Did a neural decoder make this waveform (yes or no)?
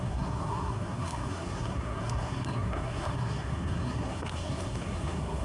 yes